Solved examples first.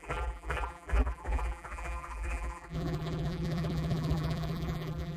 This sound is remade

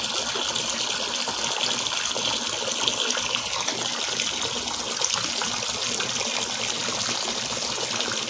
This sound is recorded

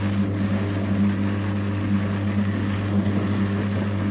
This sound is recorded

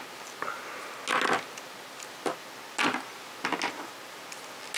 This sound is recorded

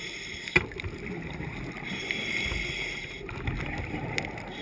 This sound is recorded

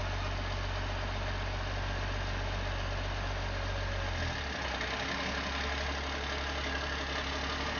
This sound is recorded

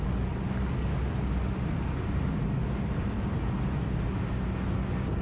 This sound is recorded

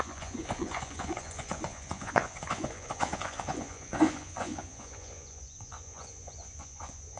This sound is remade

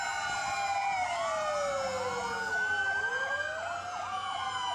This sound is recorded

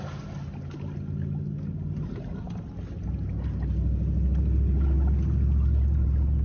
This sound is recorded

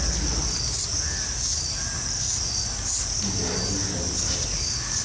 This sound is recorded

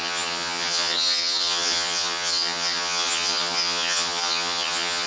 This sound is remade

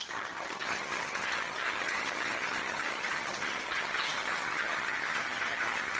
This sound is remade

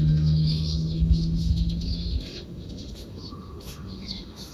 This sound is remade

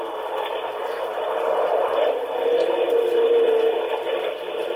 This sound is recorded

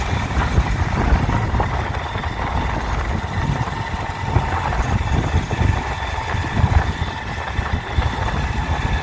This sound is recorded